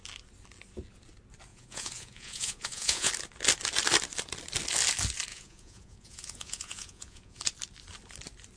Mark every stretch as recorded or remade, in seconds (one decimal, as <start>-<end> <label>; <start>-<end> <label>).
0.0-1.5 recorded; 1.5-3.1 remade; 3.1-5.3 recorded; 5.3-7.4 remade; 7.4-8.6 recorded